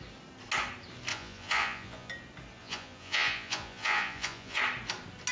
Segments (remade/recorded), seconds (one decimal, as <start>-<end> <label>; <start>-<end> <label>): 0.0-1.1 recorded; 1.1-2.1 remade; 2.1-2.6 recorded; 2.6-4.6 remade; 4.6-5.3 recorded